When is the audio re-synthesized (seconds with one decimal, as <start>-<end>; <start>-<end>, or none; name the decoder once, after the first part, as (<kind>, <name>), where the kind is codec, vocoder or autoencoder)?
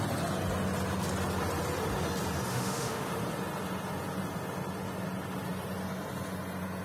2.5-3.1 (autoencoder, DAC-VAE)